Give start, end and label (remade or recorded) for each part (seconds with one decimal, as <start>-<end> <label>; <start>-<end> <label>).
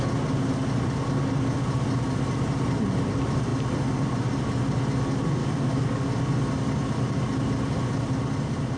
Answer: 0.0-5.4 recorded; 5.4-6.1 remade; 6.1-8.8 recorded